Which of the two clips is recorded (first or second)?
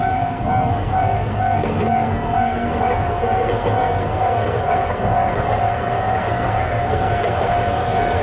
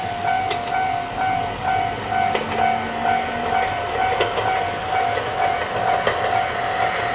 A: second